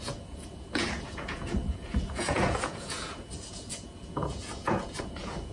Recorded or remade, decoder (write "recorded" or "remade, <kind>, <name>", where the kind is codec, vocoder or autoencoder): remade, vocoder, Vocos